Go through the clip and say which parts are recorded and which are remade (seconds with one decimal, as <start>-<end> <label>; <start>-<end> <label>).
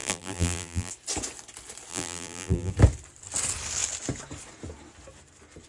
0.0-0.9 remade; 0.9-1.9 recorded; 1.9-2.7 remade; 2.7-5.7 recorded